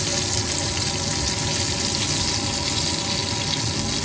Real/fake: real